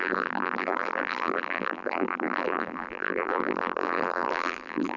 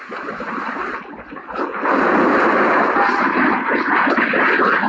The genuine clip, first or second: second